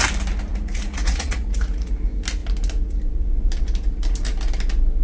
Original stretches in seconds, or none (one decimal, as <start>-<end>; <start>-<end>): 0.0-0.5; 1.9-5.0